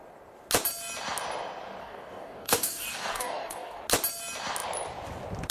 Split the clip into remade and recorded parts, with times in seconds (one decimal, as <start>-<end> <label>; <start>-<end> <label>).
0.0-1.8 recorded; 1.8-3.8 remade; 3.8-5.5 recorded